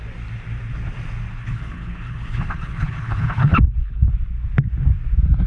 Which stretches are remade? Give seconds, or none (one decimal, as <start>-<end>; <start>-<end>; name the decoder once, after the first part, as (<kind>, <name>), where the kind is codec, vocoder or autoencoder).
1.3-4.1 (codec, HILCodec)